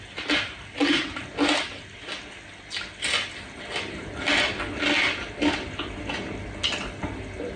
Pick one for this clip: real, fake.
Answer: real